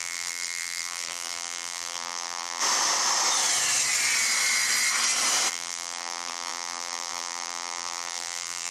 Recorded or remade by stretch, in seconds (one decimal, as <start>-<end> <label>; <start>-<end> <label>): 0.0-2.6 remade; 2.6-5.5 recorded; 5.5-8.7 remade